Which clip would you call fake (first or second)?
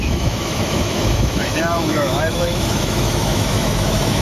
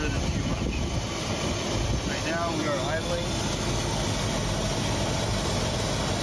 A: first